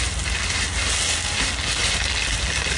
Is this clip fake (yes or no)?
no